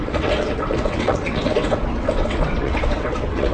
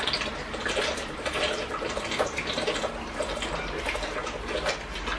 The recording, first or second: second